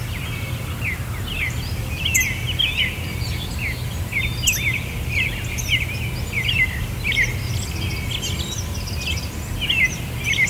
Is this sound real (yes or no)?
yes